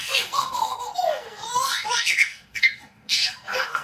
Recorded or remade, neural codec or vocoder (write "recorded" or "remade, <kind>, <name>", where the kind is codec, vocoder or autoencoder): remade, codec, SNAC